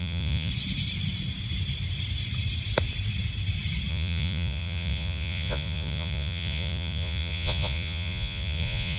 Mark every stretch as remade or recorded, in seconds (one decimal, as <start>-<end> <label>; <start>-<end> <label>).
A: 0.0-0.5 remade; 0.5-3.9 recorded; 3.9-9.0 remade